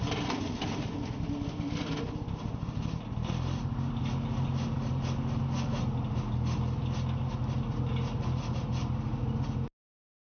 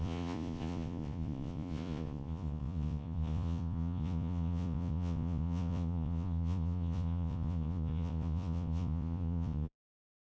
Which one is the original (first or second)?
first